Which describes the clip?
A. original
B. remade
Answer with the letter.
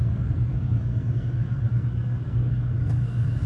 B